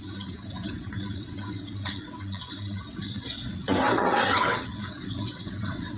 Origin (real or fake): fake